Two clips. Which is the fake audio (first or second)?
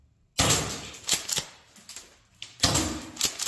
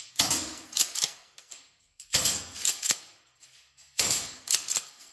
second